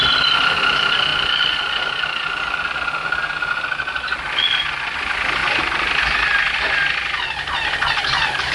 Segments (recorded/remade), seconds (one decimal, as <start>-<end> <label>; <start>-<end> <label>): 0.0-8.5 recorded